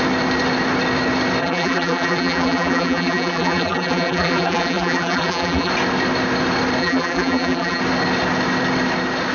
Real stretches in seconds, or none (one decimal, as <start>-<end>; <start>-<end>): 0.0-1.4; 5.7-6.8; 7.8-9.3